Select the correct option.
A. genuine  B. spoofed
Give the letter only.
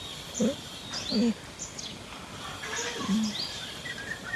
A